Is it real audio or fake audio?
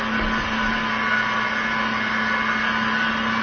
real